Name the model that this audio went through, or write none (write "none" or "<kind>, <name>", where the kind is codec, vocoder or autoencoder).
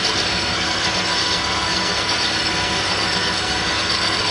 codec, SNAC